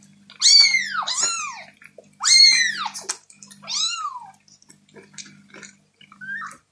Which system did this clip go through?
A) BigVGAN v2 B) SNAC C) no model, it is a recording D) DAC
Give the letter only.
C